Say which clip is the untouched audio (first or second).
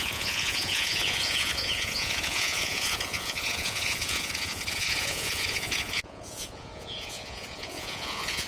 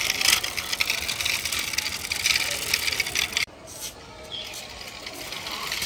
second